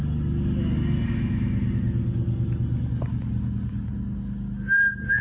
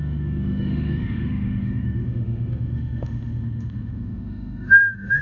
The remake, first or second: second